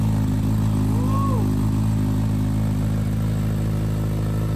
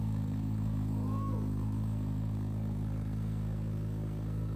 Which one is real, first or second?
first